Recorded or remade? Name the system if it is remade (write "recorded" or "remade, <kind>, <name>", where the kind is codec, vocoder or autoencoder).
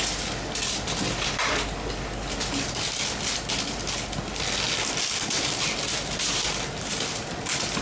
recorded